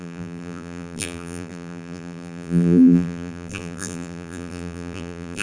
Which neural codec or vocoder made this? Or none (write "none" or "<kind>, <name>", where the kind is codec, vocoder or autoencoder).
vocoder, BigVGAN v2